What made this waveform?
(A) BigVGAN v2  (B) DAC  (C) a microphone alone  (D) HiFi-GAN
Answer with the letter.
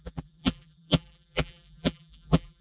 A